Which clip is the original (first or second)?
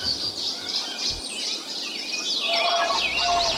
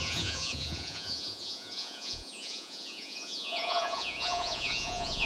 first